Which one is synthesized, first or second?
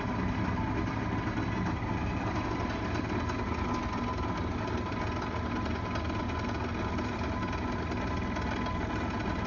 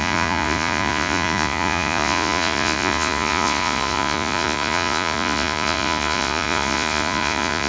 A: second